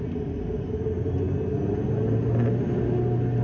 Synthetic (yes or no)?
no